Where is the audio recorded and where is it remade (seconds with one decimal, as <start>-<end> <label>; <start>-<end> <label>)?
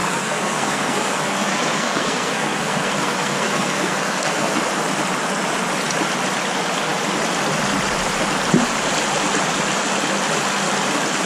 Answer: 0.0-4.6 remade; 4.6-11.3 recorded